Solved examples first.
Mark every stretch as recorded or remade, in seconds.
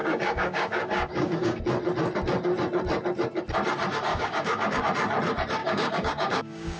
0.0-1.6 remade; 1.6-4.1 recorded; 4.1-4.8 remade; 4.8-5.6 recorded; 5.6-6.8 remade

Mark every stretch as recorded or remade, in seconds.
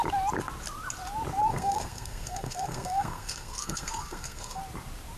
0.0-1.5 recorded; 1.5-4.6 remade; 4.6-5.2 recorded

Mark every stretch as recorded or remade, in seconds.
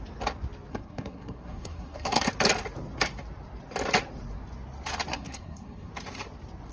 0.0-0.7 recorded; 0.7-2.2 remade; 2.2-5.1 recorded; 5.1-5.9 remade; 5.9-6.7 recorded